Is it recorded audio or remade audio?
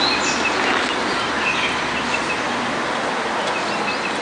recorded